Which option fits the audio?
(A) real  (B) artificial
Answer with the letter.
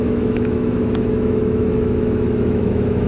B